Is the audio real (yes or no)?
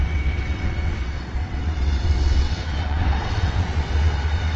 no